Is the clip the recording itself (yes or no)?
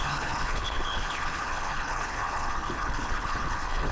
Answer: no